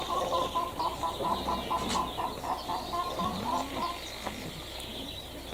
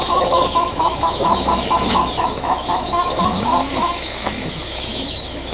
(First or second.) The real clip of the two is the first